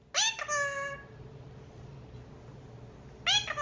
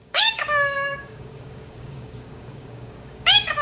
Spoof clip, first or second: second